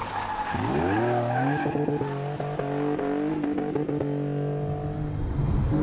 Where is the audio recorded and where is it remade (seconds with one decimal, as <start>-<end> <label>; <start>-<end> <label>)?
0.0-5.8 recorded